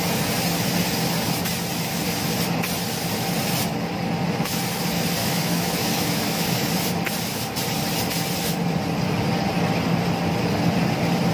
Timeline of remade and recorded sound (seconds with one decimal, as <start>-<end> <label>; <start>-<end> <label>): 0.0-5.2 recorded; 5.2-6.7 remade; 6.7-11.3 recorded